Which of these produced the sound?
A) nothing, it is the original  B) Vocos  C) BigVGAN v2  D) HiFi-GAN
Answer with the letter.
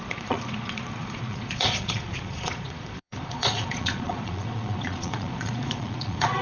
B